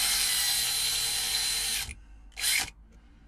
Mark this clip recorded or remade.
recorded